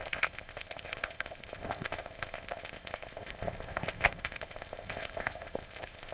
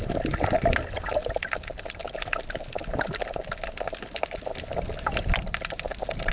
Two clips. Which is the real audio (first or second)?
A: second